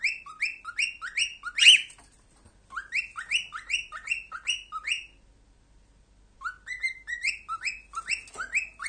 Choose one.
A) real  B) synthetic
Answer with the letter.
A